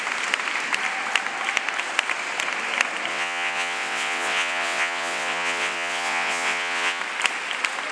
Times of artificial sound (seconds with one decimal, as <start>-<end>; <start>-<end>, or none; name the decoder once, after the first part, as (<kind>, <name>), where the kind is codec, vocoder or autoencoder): 3.1-7.0 (vocoder, WaveNeXt)